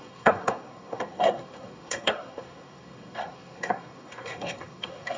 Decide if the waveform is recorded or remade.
remade